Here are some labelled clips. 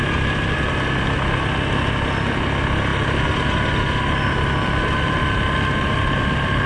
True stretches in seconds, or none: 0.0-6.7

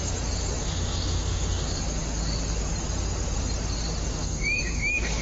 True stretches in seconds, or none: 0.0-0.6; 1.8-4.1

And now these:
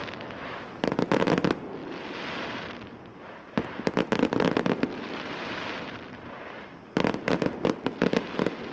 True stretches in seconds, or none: 0.8-8.7